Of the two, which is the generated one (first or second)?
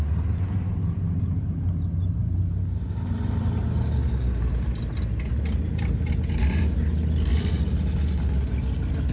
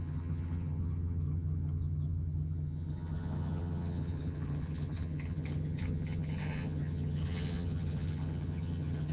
second